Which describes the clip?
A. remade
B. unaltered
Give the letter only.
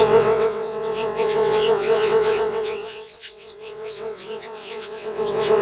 A